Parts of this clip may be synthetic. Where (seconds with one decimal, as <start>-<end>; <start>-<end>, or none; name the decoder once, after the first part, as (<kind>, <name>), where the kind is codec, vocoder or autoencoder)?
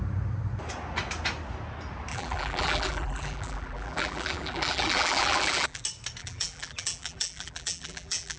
2.1-5.8 (vocoder, BigVGAN v2); 6.2-8.4